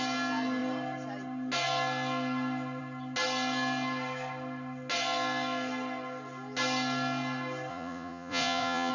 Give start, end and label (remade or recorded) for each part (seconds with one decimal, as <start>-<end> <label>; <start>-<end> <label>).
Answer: 0.0-7.7 recorded; 7.7-8.9 remade